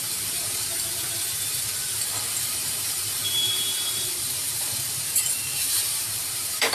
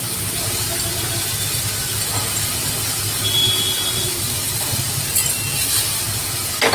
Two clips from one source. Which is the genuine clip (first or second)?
second